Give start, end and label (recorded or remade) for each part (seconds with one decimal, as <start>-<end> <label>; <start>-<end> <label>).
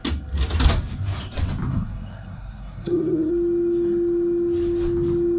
0.0-1.7 recorded; 1.7-3.3 remade; 3.3-5.4 recorded